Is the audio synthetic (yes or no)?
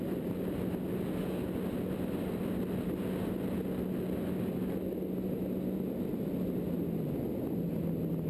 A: no